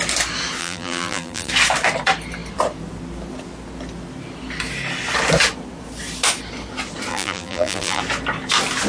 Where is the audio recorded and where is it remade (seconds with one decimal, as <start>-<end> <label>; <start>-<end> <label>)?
0.0-0.6 recorded; 0.6-1.5 remade; 1.5-7.1 recorded; 7.1-8.0 remade; 8.0-8.9 recorded